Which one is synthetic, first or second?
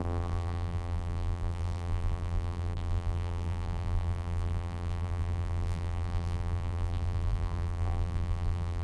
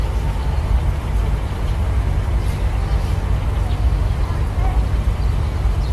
first